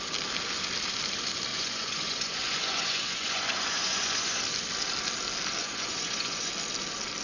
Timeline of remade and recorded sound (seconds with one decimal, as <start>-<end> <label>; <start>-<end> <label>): 0.0-1.5 recorded; 1.5-4.4 remade; 4.4-5.6 recorded; 5.6-6.5 remade; 6.5-7.2 recorded